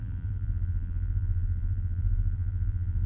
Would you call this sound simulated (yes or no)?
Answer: yes